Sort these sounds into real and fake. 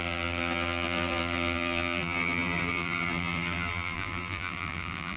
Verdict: fake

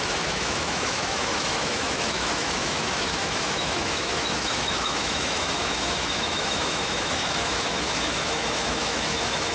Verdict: fake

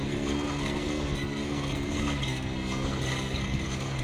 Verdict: fake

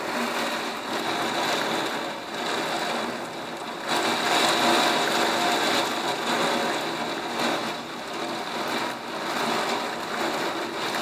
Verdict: real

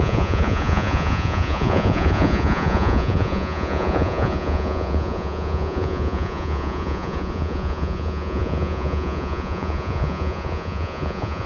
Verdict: fake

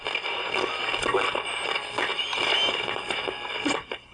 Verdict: real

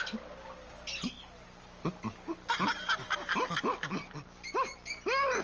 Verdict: real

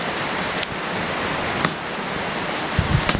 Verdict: real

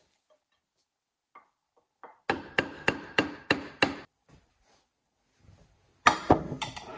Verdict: real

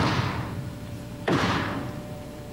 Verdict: fake